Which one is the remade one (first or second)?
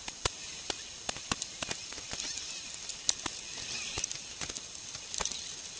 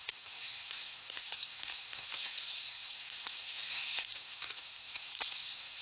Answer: second